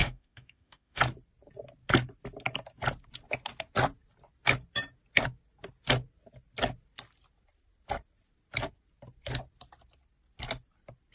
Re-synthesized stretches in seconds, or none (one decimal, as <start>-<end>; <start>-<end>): 0.0-1.0